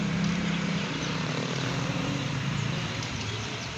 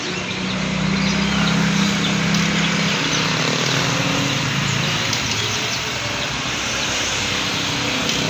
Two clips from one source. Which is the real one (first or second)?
second